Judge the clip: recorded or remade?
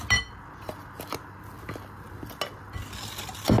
recorded